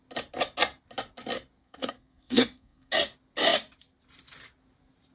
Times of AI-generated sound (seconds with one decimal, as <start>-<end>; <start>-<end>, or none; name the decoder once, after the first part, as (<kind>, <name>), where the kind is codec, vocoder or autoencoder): 1.6-2.9 (codec, SNAC)